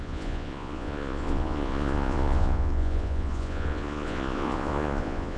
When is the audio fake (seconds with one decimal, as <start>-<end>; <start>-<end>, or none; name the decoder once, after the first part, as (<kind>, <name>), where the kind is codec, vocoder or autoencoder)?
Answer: 0.0-5.4 (vocoder, Vocos)